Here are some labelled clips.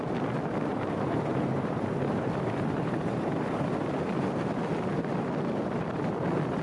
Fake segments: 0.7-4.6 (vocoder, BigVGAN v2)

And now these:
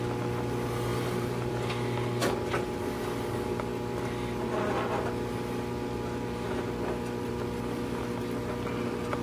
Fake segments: 0.9-1.5 (vocoder, BigVGAN v2)

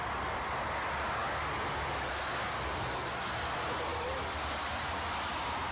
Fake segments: 3.9-4.7 (vocoder, BigVGAN v2)

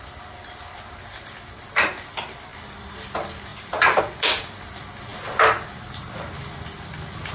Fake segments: 2.5-3.1 (vocoder, BigVGAN v2); 3.5-4.0

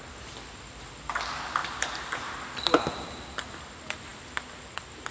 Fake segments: 1.6-2.4 (vocoder, BigVGAN v2)

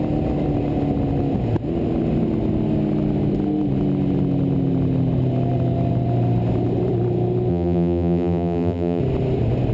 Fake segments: 7.5-9.0 (vocoder, BigVGAN v2)